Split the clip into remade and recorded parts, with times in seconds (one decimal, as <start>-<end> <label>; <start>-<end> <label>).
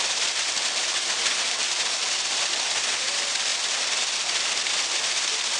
0.0-3.5 remade; 3.5-4.2 recorded; 4.2-5.6 remade